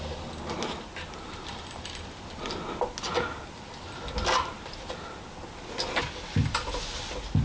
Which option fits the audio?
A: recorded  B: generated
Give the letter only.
A